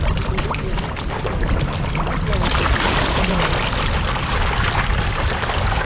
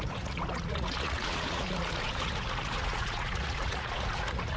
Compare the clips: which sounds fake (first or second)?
second